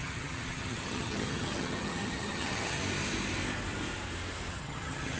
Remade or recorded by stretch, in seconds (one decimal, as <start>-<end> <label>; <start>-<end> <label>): 0.0-2.8 remade; 2.8-4.5 recorded; 4.5-5.2 remade